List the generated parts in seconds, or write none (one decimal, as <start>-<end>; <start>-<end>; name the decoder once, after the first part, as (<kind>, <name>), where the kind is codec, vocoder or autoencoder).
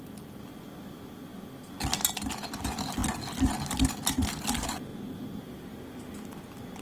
none